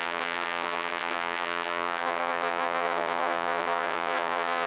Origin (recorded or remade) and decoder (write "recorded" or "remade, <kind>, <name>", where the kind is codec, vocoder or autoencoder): remade, vocoder, HiFi-GAN